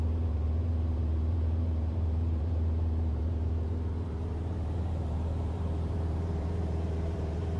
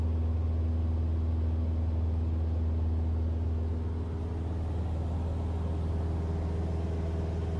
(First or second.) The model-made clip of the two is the first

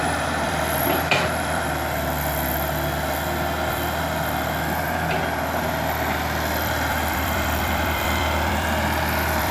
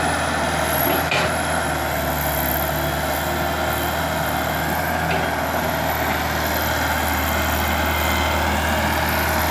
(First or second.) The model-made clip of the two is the first